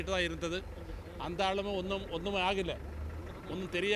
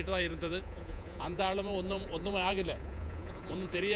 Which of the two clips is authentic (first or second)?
first